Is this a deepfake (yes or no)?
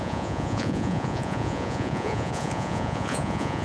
yes